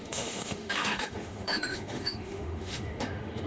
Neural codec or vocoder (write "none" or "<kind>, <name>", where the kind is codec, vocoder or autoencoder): autoencoder, DAC-VAE